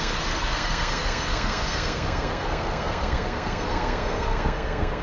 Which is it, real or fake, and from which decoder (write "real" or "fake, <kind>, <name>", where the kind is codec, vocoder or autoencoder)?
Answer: fake, codec, SNAC